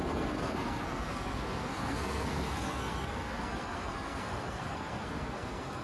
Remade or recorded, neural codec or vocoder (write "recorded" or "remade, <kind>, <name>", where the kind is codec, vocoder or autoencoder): remade, codec, SNAC